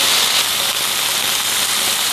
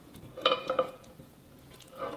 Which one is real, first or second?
first